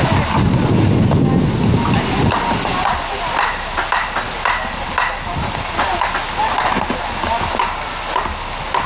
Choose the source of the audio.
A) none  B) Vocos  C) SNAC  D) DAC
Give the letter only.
A